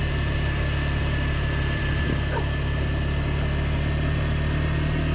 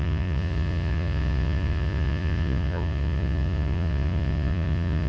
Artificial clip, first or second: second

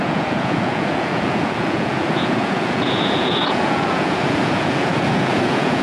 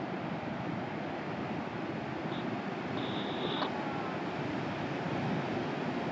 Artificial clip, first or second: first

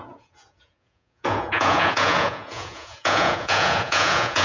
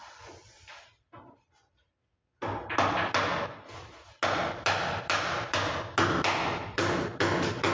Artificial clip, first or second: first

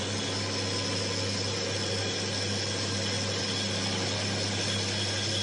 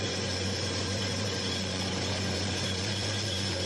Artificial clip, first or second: second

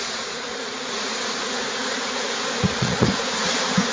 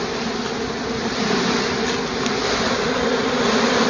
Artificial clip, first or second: first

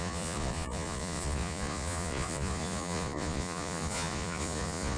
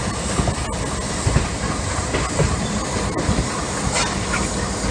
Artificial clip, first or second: first